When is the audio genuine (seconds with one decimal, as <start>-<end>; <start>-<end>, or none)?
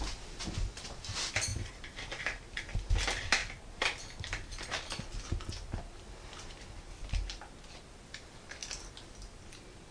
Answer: 0.0-9.9